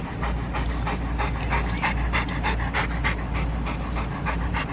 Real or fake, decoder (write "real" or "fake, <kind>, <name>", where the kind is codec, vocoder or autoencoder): real